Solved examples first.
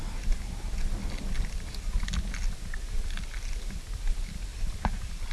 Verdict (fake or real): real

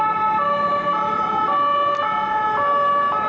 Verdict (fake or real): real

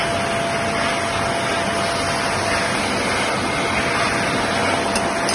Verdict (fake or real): real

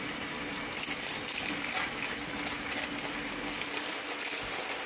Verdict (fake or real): real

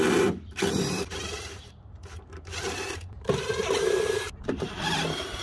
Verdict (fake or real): fake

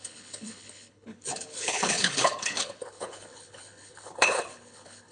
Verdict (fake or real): fake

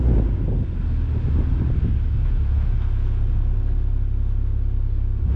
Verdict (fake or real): real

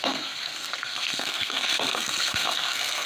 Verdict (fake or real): fake